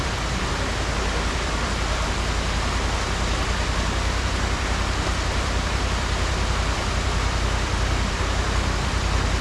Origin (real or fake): fake